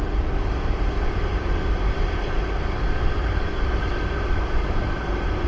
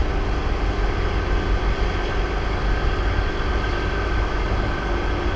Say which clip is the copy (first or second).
first